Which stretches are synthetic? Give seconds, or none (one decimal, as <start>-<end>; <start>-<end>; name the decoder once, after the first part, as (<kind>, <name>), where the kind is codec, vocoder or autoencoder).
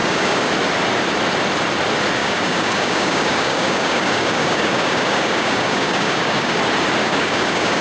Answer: 0.0-0.5 (codec, DAC); 2.2-6.6; 7.0-7.8